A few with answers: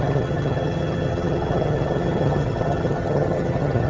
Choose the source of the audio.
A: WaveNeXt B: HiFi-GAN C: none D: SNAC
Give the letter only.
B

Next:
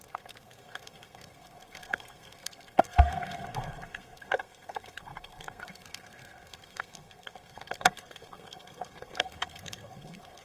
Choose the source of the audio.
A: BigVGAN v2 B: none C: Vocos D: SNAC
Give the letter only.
D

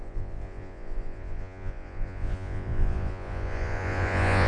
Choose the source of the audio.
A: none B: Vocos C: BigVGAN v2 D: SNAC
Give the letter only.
B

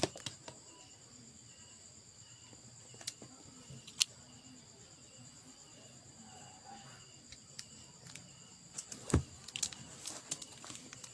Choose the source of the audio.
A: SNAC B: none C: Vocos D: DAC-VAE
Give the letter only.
B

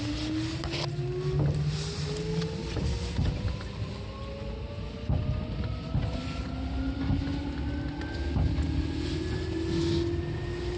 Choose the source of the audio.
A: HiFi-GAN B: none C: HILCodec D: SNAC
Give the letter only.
B